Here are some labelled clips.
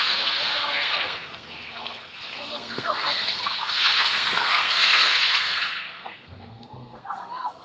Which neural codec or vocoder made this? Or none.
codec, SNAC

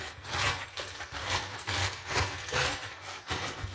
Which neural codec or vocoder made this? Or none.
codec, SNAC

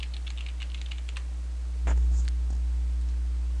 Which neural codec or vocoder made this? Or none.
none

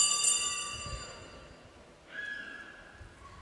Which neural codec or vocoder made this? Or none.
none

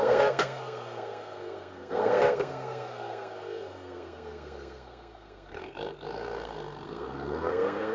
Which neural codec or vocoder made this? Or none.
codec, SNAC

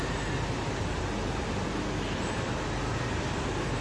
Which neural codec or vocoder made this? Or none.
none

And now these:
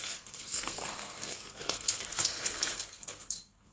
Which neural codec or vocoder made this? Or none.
codec, SNAC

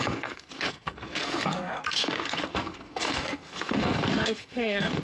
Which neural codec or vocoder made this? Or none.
codec, SNAC